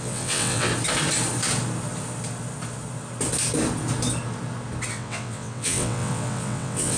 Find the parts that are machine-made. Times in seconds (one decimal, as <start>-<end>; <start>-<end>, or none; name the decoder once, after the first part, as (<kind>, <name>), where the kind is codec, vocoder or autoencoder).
0.0-0.7 (vocoder, WaveNeXt); 4.9-7.0